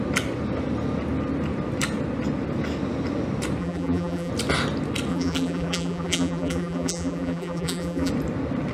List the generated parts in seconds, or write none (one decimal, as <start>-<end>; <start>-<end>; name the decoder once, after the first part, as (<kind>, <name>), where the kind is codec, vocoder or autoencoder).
3.6-4.3 (vocoder, BigVGAN v2); 5.1-8.1